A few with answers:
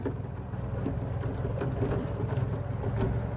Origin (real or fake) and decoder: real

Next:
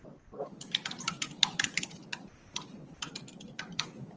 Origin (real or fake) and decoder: fake, vocoder, BigVGAN v2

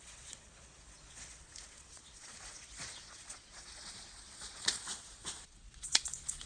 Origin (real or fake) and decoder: fake, vocoder, Vocos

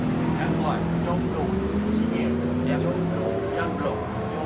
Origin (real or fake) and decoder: real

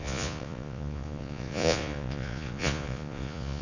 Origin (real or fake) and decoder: fake, vocoder, Vocos